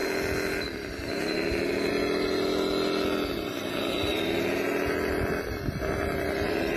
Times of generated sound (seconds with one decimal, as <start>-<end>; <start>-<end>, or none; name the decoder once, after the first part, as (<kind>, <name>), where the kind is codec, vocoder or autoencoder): none